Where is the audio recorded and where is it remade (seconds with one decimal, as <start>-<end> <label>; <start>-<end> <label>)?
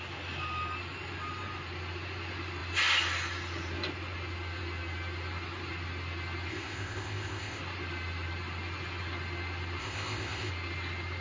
0.0-6.5 recorded; 6.5-7.6 remade; 7.6-9.8 recorded; 9.8-10.5 remade; 10.5-11.2 recorded